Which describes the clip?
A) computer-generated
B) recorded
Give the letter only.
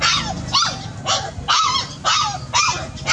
B